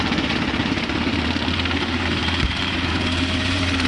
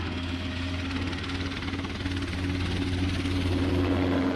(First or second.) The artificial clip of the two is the first